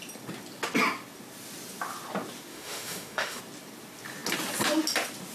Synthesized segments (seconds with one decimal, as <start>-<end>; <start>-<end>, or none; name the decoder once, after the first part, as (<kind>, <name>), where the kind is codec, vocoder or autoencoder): 2.5-3.4 (autoencoder, DAC-VAE)